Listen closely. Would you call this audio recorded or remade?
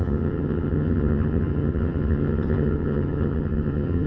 remade